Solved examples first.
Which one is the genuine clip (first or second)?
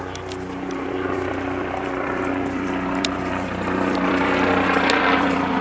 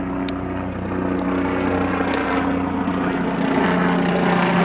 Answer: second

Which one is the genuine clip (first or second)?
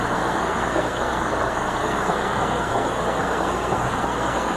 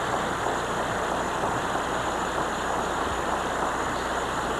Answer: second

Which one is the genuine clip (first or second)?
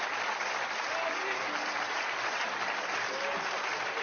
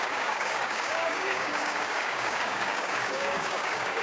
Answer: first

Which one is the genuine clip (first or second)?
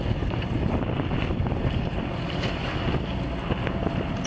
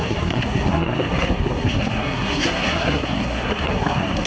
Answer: first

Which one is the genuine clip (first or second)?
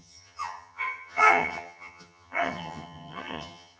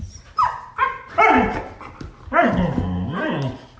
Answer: second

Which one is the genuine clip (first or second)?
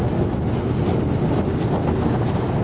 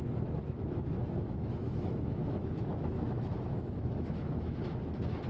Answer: first